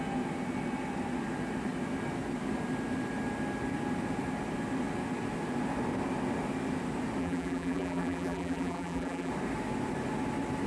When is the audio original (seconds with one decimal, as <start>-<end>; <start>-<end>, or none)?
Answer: 0.0-7.2; 9.3-10.7